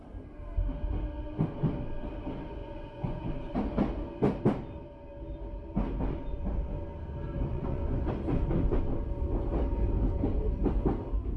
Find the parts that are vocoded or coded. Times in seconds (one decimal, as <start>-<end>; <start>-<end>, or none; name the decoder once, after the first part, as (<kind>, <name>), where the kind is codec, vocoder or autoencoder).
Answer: 2.6-3.2 (vocoder, Vocos); 7.5-8.1